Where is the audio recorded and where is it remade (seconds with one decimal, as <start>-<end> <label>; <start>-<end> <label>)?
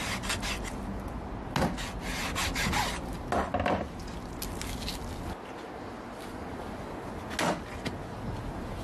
0.0-8.8 recorded